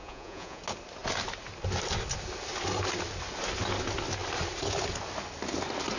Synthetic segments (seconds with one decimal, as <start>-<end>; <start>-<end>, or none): 0.0-0.6

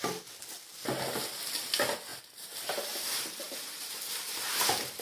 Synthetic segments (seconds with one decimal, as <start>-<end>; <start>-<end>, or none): 2.1-4.6

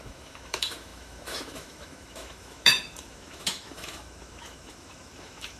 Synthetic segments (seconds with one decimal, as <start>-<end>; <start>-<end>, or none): 0.0-5.6